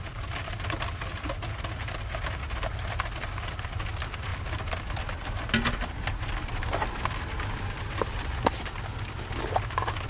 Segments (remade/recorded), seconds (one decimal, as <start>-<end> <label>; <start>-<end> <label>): 0.0-10.1 recorded